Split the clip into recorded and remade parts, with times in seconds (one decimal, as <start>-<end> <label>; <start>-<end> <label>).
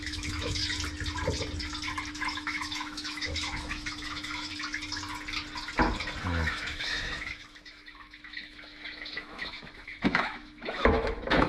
0.0-0.6 remade; 0.6-2.1 recorded; 2.1-4.5 remade; 4.5-6.2 recorded; 6.2-11.5 remade